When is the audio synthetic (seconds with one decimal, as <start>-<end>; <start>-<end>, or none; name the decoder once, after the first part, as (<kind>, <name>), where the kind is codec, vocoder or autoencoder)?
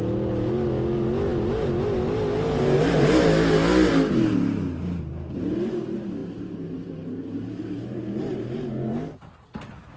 none